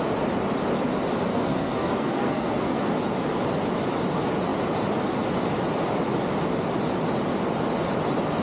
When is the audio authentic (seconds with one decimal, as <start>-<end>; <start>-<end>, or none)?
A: 0.0-1.3; 2.9-8.4